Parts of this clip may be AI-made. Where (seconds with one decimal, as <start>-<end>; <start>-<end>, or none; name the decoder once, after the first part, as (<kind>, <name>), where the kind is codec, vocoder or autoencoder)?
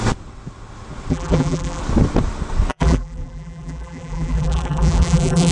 1.1-1.8 (vocoder, BigVGAN v2); 2.7-5.5